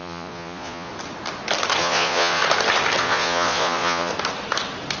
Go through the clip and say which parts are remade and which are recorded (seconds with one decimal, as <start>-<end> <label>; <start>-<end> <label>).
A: 0.0-0.9 remade; 0.9-1.8 recorded; 1.8-2.4 remade; 2.4-3.0 recorded; 3.0-4.1 remade; 4.1-5.0 recorded

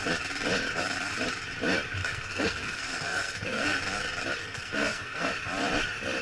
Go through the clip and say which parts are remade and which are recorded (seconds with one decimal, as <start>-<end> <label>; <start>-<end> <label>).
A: 0.0-2.0 recorded; 2.0-3.8 remade; 3.8-4.4 recorded; 4.4-5.3 remade; 5.3-6.2 recorded

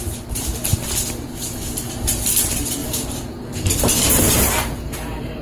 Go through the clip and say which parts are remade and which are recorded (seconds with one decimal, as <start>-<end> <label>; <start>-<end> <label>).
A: 0.0-5.4 remade

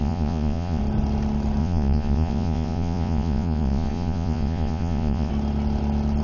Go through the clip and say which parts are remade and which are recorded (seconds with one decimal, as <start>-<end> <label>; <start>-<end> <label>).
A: 0.0-0.8 remade; 0.8-1.6 recorded; 1.6-5.3 remade; 5.3-6.2 recorded

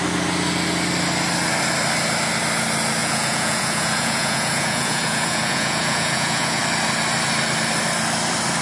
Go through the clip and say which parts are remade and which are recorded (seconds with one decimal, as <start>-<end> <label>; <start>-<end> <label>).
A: 0.0-3.0 recorded; 3.0-6.6 remade; 6.6-8.6 recorded

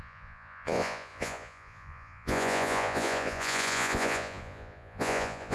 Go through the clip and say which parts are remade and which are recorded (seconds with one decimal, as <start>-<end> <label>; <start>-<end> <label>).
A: 0.0-5.5 remade

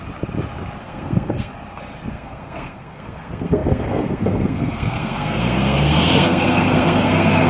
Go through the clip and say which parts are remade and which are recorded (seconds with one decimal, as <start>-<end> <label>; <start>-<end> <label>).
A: 0.0-0.8 recorded; 0.8-1.5 remade; 1.5-2.1 recorded; 2.1-7.5 remade